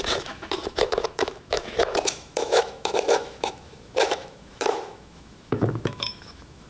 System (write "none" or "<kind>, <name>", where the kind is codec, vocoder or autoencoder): autoencoder, DAC-VAE